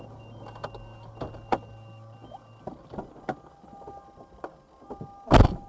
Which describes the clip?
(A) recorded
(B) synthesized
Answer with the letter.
A